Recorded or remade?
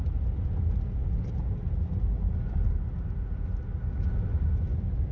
recorded